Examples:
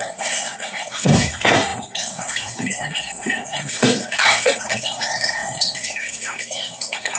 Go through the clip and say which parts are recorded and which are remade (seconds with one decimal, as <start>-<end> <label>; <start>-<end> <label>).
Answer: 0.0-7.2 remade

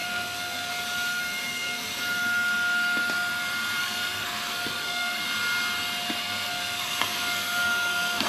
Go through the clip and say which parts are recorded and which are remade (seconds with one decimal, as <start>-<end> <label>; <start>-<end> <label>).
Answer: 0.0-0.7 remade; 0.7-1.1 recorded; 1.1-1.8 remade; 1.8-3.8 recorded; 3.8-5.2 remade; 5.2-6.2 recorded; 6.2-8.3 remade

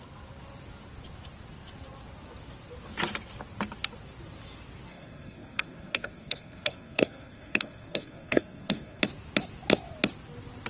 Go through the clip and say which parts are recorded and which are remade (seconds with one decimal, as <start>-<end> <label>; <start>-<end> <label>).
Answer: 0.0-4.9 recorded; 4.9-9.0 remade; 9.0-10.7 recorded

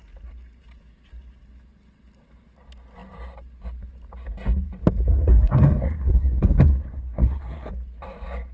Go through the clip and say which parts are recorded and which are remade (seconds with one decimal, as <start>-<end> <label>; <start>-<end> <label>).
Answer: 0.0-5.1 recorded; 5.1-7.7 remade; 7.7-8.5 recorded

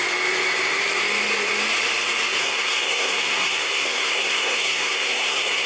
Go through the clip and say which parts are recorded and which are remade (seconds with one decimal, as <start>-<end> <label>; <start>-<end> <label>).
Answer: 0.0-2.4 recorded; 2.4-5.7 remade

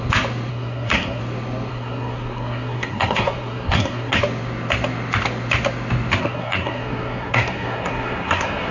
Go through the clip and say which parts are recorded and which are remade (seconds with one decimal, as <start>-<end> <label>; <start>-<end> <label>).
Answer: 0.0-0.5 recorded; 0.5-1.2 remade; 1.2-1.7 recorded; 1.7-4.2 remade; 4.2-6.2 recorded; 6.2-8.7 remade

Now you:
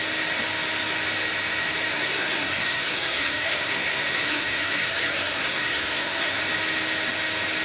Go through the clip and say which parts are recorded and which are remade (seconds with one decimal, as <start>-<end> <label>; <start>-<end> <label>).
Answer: 0.0-1.9 recorded; 1.9-6.4 remade; 6.4-7.6 recorded